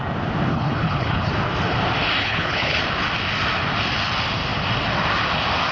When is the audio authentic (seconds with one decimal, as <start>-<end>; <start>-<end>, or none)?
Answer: 0.0-0.5; 1.3-2.2; 2.8-5.7